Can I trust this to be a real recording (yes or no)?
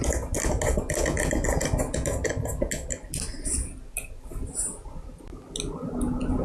yes